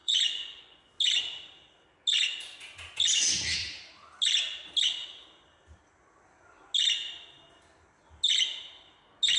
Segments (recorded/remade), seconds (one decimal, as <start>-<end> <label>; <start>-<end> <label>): 0.0-0.8 remade; 0.8-9.4 recorded